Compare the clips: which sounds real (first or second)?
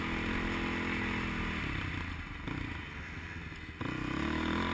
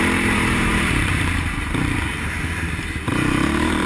first